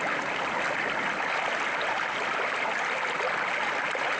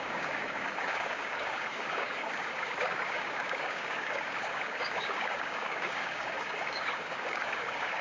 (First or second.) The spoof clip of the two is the second